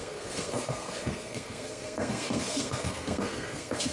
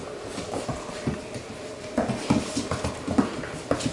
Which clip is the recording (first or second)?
second